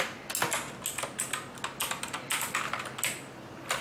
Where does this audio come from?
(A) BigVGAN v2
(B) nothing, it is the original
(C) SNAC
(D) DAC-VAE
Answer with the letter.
B